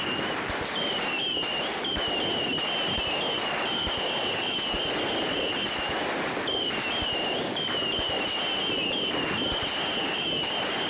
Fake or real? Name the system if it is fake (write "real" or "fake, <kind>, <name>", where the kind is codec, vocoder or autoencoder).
real